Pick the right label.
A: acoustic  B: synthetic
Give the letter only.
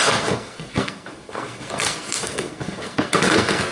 B